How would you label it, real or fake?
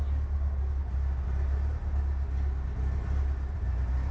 real